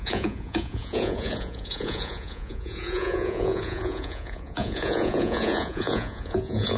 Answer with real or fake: fake